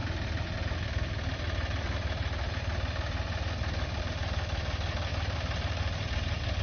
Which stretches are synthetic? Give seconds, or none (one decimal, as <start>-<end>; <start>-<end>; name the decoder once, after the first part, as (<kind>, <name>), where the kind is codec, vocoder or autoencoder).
5.1-6.6 (vocoder, BigVGAN v2)